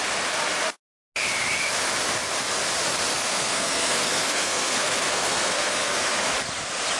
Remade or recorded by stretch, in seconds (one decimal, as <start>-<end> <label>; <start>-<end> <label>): 0.0-3.1 recorded; 3.1-6.2 remade; 6.2-7.0 recorded